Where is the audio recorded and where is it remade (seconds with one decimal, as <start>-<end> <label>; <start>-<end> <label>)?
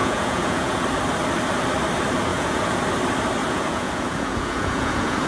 0.0-0.8 remade; 0.8-2.3 recorded; 2.3-2.8 remade; 2.8-3.4 recorded; 3.4-5.3 remade